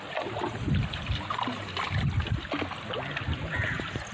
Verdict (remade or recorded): recorded